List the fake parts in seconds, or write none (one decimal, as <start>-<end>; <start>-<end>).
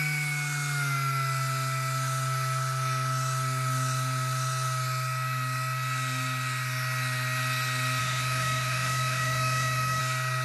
8.0-10.0